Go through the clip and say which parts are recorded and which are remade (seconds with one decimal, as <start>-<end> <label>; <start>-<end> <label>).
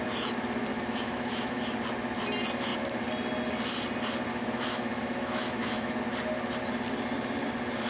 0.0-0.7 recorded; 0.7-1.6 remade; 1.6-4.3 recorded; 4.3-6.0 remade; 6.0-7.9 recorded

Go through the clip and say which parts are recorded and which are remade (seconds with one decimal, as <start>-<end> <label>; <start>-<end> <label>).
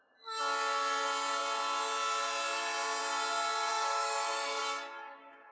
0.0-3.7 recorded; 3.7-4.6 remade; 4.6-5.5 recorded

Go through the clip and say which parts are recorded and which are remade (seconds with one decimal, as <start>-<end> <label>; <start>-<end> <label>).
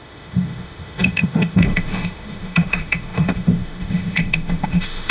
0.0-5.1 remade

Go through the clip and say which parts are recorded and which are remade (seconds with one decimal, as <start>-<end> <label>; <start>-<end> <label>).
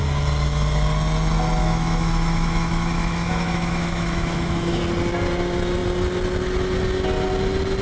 0.0-1.6 recorded; 1.6-4.8 remade; 4.8-7.8 recorded